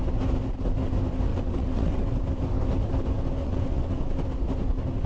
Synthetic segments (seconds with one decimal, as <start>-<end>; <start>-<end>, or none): 1.3-2.2; 3.4-4.1